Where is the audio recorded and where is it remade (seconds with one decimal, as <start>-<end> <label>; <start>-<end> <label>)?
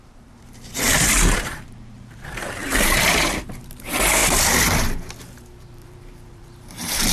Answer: 0.0-4.2 remade; 4.2-5.7 recorded; 5.7-7.1 remade